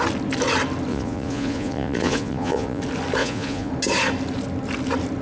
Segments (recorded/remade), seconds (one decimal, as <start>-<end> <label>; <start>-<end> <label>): 0.0-0.9 recorded; 0.9-2.8 remade; 2.8-3.2 recorded; 3.2-3.7 remade; 3.7-5.2 recorded